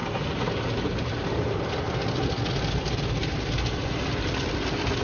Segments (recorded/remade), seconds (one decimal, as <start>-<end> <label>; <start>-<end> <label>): 0.0-5.0 recorded